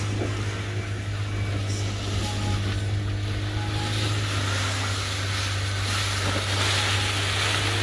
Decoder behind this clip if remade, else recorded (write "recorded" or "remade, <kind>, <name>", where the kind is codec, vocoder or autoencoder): recorded